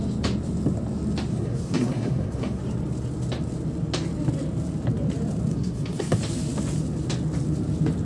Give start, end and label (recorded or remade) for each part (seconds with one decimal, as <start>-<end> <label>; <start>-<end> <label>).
0.0-1.3 recorded; 1.3-2.6 remade; 2.6-5.5 recorded; 5.5-6.2 remade; 6.2-8.1 recorded